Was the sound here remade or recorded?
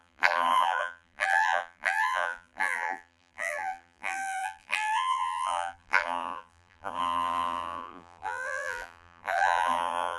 remade